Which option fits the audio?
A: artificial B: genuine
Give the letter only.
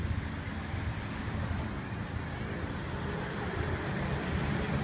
B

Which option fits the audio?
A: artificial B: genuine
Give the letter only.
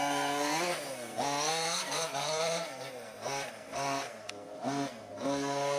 A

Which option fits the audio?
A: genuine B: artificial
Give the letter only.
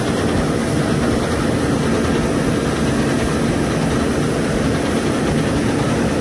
A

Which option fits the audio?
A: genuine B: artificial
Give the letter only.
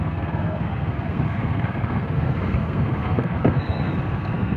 B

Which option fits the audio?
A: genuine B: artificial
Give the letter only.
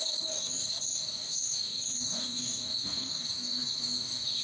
B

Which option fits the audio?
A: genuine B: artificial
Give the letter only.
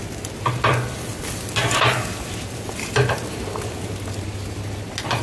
A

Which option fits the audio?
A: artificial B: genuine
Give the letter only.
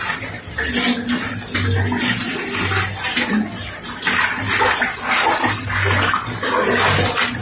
B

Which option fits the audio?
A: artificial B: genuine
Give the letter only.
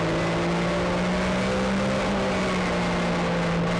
B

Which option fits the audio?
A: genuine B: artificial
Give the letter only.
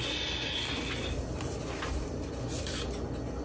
A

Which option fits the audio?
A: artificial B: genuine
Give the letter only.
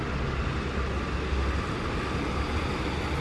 B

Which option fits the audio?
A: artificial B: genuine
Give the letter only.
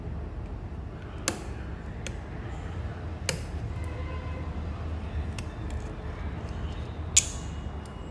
B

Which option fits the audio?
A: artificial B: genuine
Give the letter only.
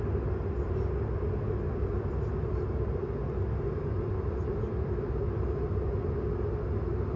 B